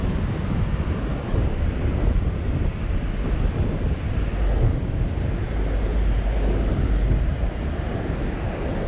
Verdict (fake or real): real